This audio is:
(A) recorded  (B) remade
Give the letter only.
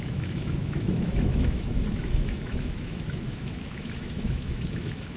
B